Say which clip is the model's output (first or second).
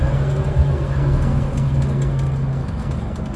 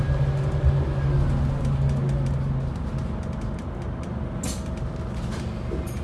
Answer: first